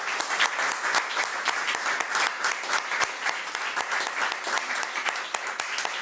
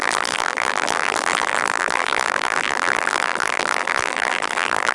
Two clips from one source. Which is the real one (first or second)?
first